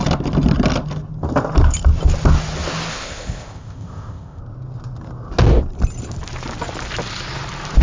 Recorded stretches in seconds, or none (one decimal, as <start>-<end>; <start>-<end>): 0.0-2.9; 4.4-7.8